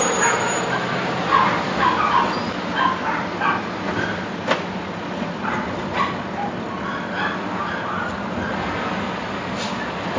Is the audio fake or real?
real